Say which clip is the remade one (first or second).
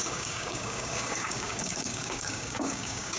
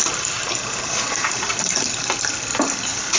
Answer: first